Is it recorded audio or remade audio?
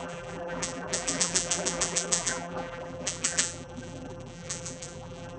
remade